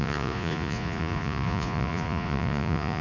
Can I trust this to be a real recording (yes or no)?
no